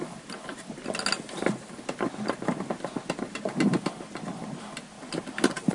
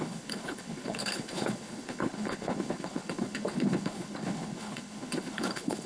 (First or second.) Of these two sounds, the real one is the first